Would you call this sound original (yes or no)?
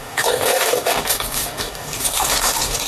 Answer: no